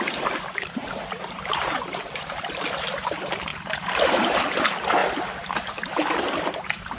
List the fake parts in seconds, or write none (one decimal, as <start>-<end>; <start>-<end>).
0.8-2.1; 3.5-4.4